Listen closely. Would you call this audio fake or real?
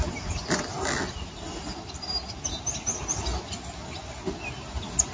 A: real